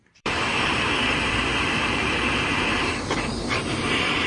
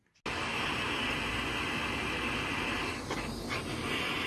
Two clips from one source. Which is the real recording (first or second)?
second